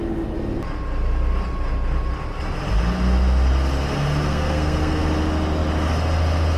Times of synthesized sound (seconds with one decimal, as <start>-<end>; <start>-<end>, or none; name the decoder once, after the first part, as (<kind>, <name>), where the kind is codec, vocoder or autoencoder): 4.3-5.0 (codec, SNAC)